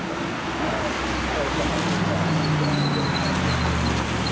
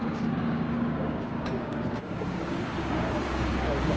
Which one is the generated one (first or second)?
second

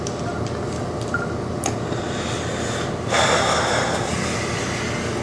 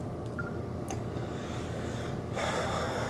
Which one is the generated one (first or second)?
second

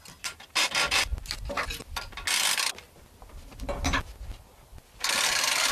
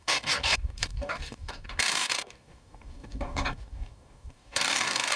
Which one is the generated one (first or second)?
second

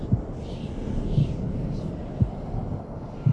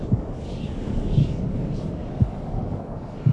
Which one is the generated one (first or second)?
second